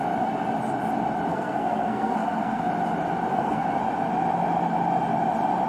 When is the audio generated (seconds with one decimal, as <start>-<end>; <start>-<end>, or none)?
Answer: 1.3-2.7; 3.3-3.8